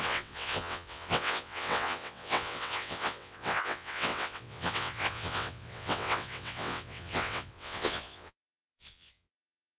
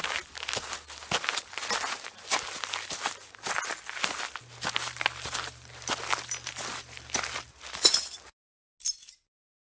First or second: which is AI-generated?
first